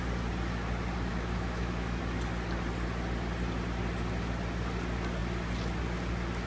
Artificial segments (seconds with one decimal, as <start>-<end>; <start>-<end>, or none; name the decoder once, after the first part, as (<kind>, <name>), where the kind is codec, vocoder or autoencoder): 1.1-2.0 (autoencoder, DAC-VAE)